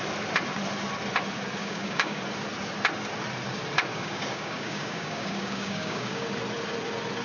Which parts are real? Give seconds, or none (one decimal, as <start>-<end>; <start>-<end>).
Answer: 0.0-1.6; 2.2-3.9; 6.3-7.2